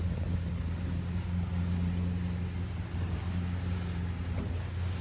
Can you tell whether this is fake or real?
real